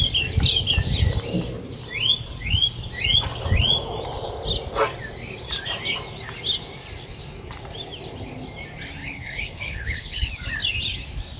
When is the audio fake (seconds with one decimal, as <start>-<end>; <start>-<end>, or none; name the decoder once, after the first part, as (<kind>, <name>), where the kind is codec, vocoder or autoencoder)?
9.0-10.3 (codec, HILCodec)